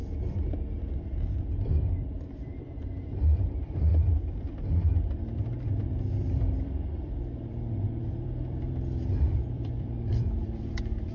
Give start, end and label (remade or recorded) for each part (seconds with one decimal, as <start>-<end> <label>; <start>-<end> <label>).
0.0-1.4 recorded; 1.4-3.9 remade; 3.9-6.3 recorded; 6.3-11.1 remade